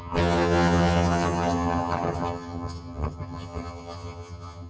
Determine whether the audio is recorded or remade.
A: remade